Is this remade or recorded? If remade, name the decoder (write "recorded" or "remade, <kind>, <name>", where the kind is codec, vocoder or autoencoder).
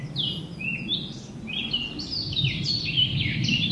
recorded